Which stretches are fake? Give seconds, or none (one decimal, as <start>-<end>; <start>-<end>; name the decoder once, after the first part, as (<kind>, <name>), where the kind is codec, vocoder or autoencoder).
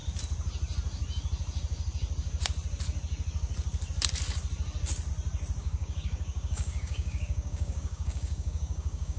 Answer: 5.6-9.2 (codec, DAC)